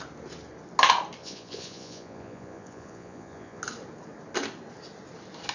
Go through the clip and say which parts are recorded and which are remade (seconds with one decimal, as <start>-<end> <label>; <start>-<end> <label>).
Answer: 0.0-1.2 recorded; 1.2-3.6 remade; 3.6-5.5 recorded